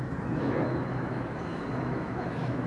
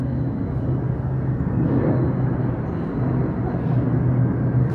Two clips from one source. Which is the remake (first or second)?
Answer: first